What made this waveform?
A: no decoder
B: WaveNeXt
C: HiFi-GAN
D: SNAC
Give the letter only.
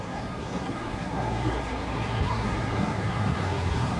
D